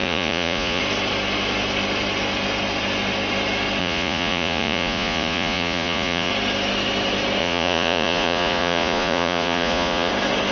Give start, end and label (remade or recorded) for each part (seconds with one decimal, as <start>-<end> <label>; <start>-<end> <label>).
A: 0.0-0.8 remade; 0.8-3.8 recorded; 3.8-6.3 remade; 6.3-7.4 recorded; 7.4-10.1 remade; 10.1-10.5 recorded